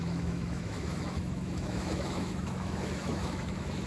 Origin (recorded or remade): remade